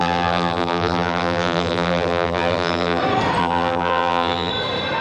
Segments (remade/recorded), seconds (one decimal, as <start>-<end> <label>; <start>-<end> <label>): 0.0-3.0 remade; 3.0-3.4 recorded; 3.4-4.5 remade; 4.5-5.0 recorded